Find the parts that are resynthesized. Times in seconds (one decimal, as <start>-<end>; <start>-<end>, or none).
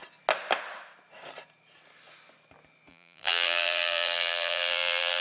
2.9-5.2